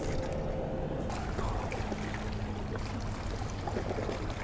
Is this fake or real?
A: real